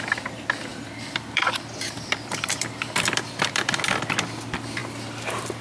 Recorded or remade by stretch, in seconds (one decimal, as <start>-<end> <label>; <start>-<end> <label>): 0.0-0.7 recorded; 0.7-3.8 remade; 3.8-5.6 recorded